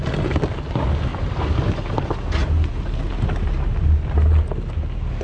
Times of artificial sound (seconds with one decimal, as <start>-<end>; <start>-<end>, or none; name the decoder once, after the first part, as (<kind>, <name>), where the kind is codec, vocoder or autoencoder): 1.1-2.0 (vocoder, BigVGAN v2); 2.4-3.1